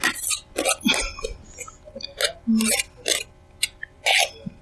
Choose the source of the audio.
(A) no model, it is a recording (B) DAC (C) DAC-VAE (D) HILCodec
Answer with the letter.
A